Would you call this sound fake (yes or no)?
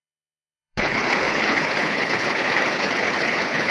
yes